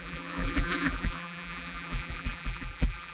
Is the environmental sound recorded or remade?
remade